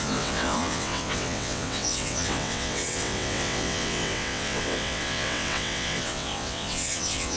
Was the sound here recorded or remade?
remade